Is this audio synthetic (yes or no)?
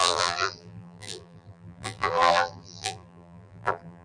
yes